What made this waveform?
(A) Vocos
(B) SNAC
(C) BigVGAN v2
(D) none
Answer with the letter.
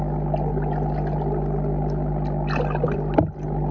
D